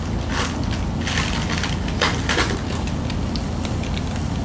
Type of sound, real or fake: real